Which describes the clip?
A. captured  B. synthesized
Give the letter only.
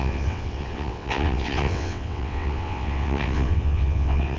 B